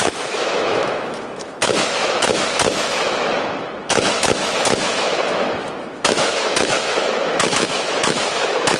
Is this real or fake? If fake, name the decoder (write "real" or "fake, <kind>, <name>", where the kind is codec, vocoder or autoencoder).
fake, autoencoder, DAC-VAE